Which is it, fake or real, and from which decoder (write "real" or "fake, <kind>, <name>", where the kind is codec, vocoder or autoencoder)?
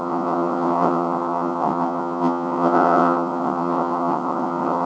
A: fake, vocoder, WaveNeXt